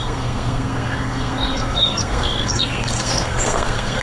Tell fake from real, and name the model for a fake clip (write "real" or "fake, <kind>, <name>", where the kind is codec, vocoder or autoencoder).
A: fake, codec, SNAC